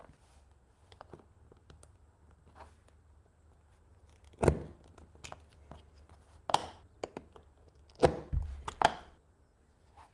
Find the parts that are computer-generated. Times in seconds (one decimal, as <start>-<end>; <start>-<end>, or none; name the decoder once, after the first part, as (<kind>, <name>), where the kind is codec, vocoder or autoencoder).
none

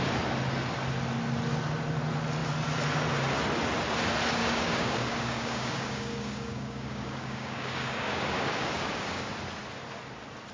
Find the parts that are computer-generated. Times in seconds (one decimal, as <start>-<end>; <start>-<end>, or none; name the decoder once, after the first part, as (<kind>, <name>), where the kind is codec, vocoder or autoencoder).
4.4-9.3 (codec, DAC)

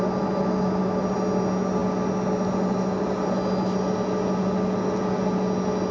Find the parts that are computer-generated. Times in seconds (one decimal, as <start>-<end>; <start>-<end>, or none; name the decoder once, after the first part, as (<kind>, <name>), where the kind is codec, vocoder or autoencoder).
none

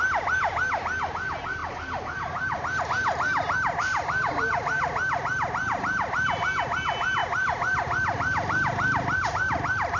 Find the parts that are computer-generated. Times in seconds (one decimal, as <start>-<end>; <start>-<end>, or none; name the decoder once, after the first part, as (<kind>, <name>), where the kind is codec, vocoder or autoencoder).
3.8-4.5 (vocoder, BigVGAN v2)

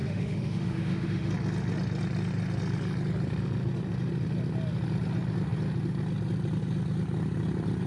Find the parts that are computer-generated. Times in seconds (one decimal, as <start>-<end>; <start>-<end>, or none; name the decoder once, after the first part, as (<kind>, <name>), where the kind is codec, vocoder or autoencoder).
0.0-1.3 (autoencoder, DAC-VAE)

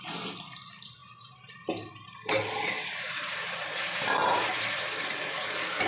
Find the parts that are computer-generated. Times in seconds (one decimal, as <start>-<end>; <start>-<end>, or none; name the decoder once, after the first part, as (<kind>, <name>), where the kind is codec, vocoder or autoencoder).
1.0-4.5 (vocoder, BigVGAN v2)

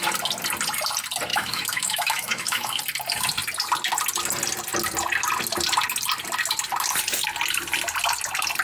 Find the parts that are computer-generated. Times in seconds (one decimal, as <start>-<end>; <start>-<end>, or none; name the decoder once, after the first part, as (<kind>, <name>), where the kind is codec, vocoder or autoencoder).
1.3-2.8 (autoencoder, DAC-VAE)